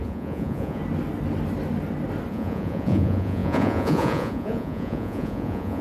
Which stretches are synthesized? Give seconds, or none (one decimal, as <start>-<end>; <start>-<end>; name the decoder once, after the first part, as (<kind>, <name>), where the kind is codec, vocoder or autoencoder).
0.0-0.8 (vocoder, Vocos); 2.3-5.8